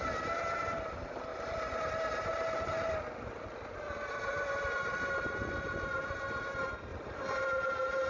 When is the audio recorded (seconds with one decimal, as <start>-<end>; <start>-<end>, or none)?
0.0-1.3; 1.8-2.3; 2.9-6.9; 7.4-8.1